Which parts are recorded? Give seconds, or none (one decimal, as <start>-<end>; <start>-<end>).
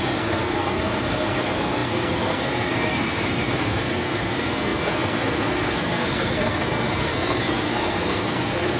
none